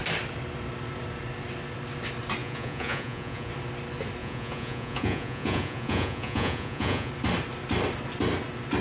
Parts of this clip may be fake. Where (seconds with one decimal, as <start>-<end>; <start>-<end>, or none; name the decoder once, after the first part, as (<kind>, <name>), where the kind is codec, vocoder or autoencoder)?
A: 2.4-3.5 (vocoder, Vocos); 4.2-7.1

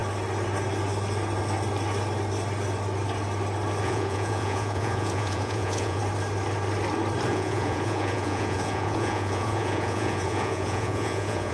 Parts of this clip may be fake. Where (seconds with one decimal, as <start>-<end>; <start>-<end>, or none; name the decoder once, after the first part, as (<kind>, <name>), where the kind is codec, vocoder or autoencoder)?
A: 3.8-6.0 (vocoder, Vocos); 7.3-11.5

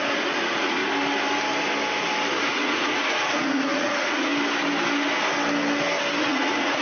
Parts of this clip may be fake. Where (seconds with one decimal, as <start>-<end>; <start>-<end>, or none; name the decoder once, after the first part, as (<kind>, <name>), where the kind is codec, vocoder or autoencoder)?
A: 0.0-0.8 (vocoder, Vocos); 2.5-4.3; 6.2-6.8

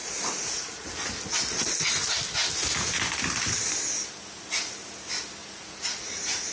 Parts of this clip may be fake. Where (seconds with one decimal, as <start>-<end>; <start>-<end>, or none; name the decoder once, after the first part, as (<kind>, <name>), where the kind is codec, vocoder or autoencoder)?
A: 0.0-0.9 (vocoder, Vocos); 5.4-6.5

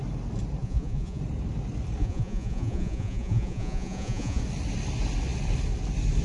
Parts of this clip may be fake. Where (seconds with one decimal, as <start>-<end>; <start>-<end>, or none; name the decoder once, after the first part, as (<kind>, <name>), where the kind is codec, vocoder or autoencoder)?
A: 0.6-1.2 (vocoder, Vocos); 2.0-4.4

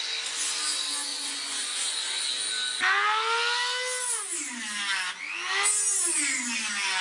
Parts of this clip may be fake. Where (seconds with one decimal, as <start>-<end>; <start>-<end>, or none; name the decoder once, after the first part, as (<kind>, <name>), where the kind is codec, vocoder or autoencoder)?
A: 1.1-2.2 (vocoder, Vocos)

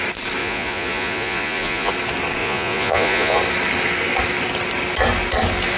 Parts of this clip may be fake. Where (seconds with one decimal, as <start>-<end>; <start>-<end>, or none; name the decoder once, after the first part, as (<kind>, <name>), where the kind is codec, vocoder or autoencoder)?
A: 0.4-1.9 (vocoder, Vocos); 2.4-3.4

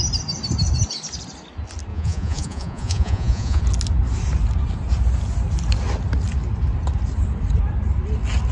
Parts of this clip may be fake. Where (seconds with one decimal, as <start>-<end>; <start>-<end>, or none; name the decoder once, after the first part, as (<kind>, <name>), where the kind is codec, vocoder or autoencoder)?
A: 1.9-3.6 (vocoder, Vocos)